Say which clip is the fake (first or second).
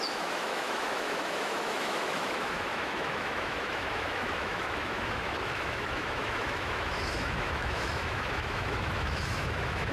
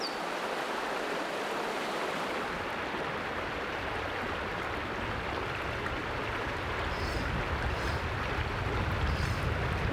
first